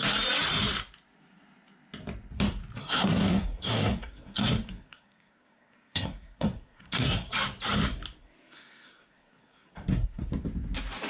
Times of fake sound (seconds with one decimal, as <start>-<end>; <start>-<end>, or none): 2.8-7.3; 8.2-10.3

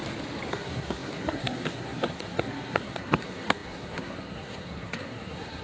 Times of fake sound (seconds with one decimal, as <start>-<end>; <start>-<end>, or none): 0.5-5.6

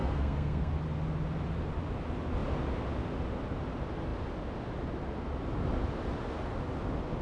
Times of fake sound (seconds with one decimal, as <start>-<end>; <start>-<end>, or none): 0.0-0.7